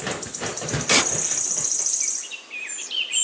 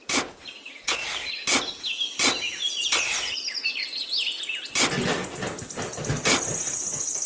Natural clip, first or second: second